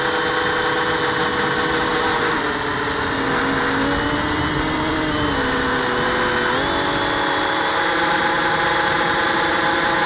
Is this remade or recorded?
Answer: recorded